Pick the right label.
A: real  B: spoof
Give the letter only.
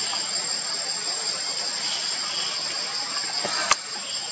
A